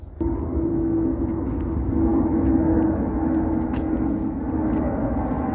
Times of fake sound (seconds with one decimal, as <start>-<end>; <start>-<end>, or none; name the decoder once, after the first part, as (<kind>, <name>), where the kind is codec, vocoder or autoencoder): 0.7-1.2 (codec, SNAC)